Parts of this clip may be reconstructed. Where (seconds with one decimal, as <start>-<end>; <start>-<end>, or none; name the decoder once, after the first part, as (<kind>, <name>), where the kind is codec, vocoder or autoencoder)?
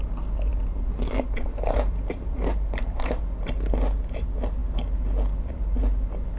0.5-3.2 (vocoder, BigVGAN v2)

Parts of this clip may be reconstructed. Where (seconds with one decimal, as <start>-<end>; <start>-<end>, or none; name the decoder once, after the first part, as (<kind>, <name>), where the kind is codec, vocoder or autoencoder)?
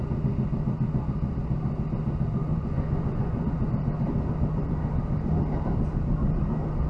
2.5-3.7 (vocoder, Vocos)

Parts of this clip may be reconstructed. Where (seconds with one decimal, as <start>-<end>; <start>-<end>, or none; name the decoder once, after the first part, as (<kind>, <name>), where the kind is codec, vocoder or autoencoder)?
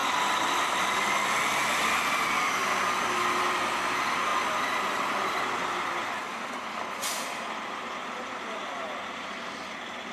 0.0-4.3 (vocoder, BigVGAN v2); 9.2-10.1